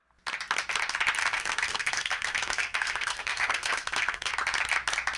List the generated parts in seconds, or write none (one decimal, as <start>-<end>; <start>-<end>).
1.2-4.3